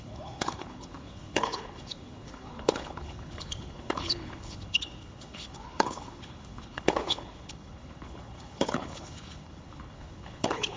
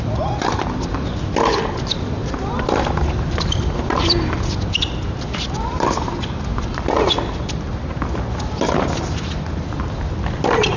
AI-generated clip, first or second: first